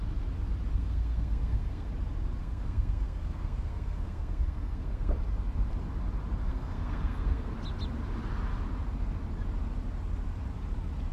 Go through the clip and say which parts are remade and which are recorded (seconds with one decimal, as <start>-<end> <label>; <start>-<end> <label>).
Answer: 0.0-0.7 recorded; 0.7-1.9 remade; 1.9-2.4 recorded; 2.4-5.1 remade; 5.1-6.5 recorded; 6.5-7.5 remade; 7.5-11.1 recorded

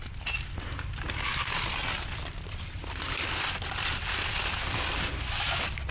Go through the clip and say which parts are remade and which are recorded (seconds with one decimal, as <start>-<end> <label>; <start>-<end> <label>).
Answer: 0.0-5.9 recorded

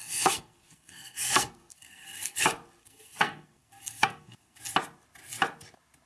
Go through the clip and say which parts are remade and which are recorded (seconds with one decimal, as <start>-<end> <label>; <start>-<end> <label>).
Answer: 0.0-2.4 remade; 2.4-2.8 recorded; 2.8-4.6 remade; 4.6-6.1 recorded

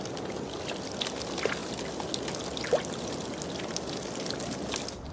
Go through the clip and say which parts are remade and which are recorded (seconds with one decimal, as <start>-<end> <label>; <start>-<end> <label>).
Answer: 0.0-5.1 recorded

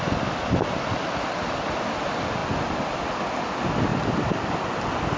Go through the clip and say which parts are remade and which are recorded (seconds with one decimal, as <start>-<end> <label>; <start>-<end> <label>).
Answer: 0.0-5.2 recorded

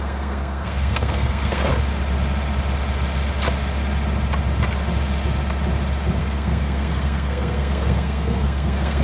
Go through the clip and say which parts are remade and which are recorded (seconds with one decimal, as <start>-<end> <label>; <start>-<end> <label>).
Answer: 0.0-1.7 remade; 1.7-6.2 recorded; 6.2-9.0 remade